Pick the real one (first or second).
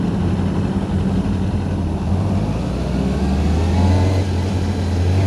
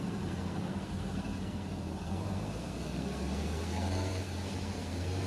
first